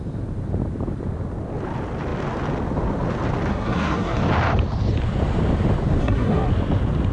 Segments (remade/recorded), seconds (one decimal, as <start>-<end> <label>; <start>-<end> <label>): 0.0-3.5 recorded; 3.5-4.2 remade; 4.2-6.0 recorded; 6.0-6.5 remade; 6.5-7.1 recorded